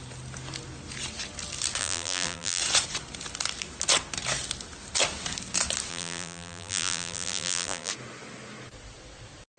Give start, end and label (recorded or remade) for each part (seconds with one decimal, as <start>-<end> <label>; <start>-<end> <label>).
0.0-1.8 recorded; 1.8-2.6 remade; 2.6-5.9 recorded; 5.9-7.9 remade; 7.9-9.6 recorded